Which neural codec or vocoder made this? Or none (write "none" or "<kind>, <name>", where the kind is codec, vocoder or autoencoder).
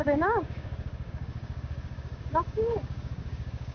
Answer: codec, DAC